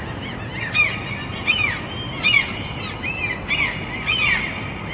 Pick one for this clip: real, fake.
real